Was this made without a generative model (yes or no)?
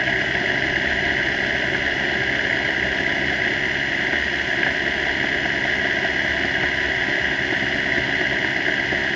yes